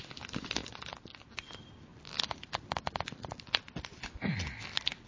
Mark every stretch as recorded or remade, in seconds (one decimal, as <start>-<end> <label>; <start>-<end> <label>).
0.0-0.6 recorded; 0.6-1.5 remade; 1.5-1.9 recorded; 1.9-3.9 remade; 3.9-5.1 recorded